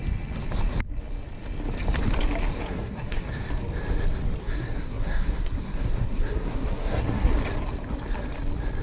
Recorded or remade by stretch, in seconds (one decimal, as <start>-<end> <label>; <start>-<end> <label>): 0.0-2.6 recorded; 2.6-3.3 remade; 3.3-4.4 recorded; 4.4-7.3 remade; 7.3-8.8 recorded